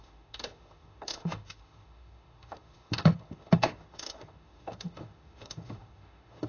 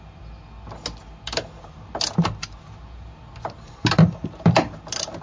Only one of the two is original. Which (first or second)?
second